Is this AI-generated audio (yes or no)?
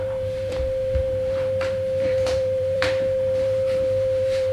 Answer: yes